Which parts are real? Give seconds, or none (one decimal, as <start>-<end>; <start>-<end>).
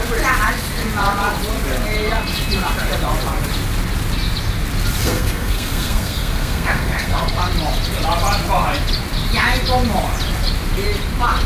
0.0-5.0; 7.4-11.5